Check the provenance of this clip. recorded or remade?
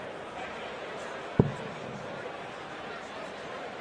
recorded